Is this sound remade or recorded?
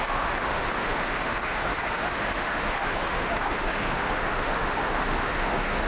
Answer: remade